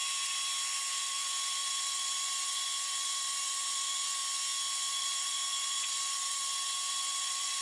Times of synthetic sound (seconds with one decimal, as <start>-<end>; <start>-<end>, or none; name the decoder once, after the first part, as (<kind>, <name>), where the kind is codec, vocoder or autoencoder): 0.9-4.2 (vocoder, Vocos); 4.9-7.6